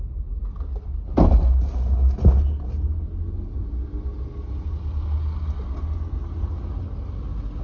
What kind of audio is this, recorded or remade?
recorded